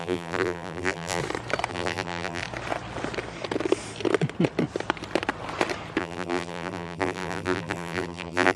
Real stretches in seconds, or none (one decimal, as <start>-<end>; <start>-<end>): 1.2-1.7; 2.4-6.0